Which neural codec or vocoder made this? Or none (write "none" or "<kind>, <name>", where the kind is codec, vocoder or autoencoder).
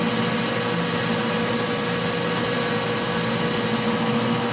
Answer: none